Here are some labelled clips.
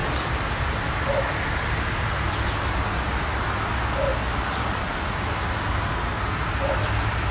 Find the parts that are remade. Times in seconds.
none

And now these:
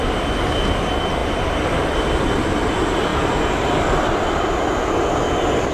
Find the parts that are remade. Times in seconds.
none